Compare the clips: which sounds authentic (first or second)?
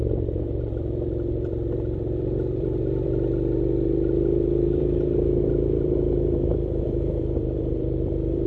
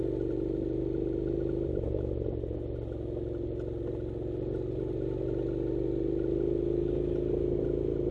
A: second